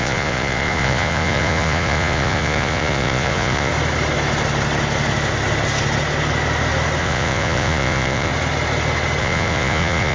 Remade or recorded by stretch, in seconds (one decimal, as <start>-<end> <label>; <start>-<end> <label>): 0.0-3.7 remade; 3.7-7.0 recorded; 7.0-8.3 remade; 8.3-9.2 recorded; 9.2-10.1 remade